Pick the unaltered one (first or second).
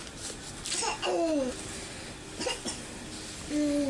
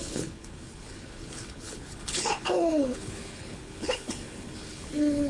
first